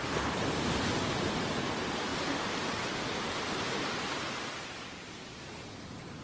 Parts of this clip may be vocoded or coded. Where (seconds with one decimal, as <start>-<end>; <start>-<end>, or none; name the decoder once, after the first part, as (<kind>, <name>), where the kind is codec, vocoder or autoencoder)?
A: none